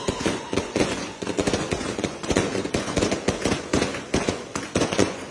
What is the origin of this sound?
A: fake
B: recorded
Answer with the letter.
A